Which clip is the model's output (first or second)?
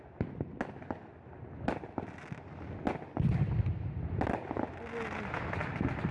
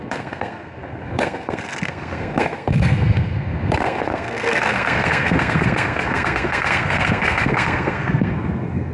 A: second